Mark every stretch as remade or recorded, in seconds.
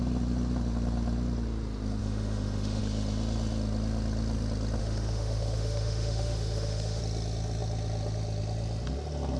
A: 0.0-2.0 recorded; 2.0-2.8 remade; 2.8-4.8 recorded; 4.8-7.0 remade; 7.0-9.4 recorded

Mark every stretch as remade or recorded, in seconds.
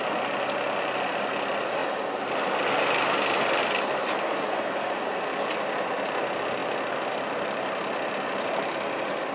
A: 0.0-9.3 recorded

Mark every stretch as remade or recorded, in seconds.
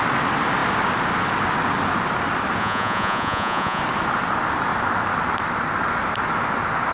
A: 0.0-2.6 recorded; 2.6-3.8 remade; 3.8-6.9 recorded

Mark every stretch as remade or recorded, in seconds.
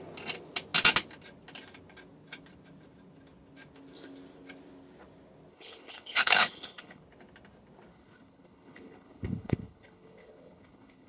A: 0.0-5.5 recorded; 5.5-7.0 remade; 7.0-7.9 recorded; 7.9-11.1 remade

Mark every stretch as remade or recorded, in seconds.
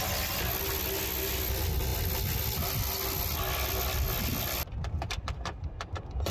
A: 0.0-6.3 recorded